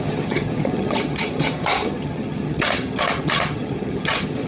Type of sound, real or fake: fake